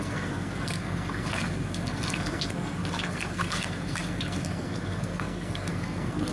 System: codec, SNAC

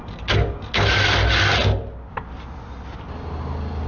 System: none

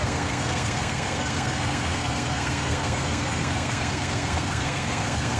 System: codec, SNAC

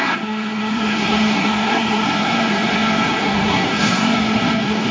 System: codec, SNAC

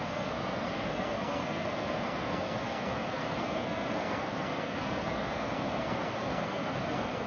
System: codec, SNAC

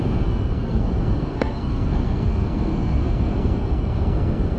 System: codec, SNAC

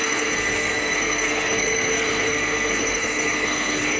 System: codec, SNAC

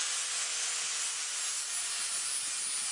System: none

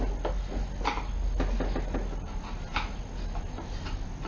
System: none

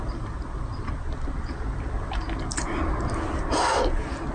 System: none